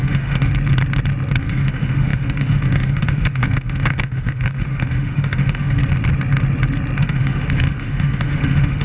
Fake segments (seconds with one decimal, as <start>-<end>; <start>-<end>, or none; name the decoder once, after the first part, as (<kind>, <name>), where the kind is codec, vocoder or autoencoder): 0.0-0.5 (autoencoder, DAC-VAE); 1.4-5.8; 7.0-8.8